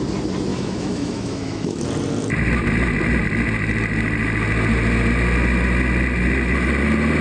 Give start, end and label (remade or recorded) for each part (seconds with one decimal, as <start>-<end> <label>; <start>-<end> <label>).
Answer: 0.0-0.5 recorded; 0.5-1.8 remade; 1.8-7.2 recorded